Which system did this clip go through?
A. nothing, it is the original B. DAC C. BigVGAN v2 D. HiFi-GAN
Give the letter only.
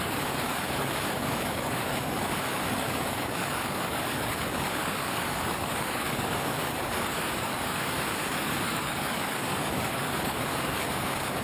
B